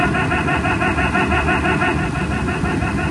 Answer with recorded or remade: recorded